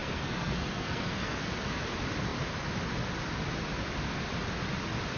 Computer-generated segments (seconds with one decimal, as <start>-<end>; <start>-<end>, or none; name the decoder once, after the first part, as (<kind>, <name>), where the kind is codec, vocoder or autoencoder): 0.0-1.8 (codec, SNAC)